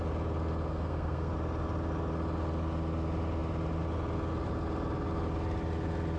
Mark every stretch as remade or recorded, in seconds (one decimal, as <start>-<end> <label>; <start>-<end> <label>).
0.0-0.7 recorded; 0.7-1.3 remade; 1.3-6.2 recorded